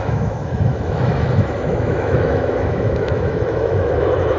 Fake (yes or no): yes